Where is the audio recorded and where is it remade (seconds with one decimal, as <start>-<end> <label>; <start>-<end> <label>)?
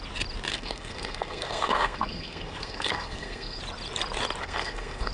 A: 0.0-0.5 recorded; 0.5-3.6 remade; 3.6-4.4 recorded; 4.4-5.1 remade